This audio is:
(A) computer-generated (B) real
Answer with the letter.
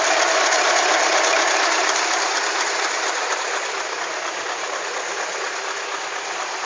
A